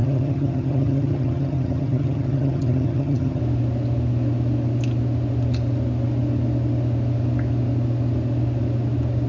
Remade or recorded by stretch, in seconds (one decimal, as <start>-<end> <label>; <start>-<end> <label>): 0.0-3.4 remade; 3.4-9.3 recorded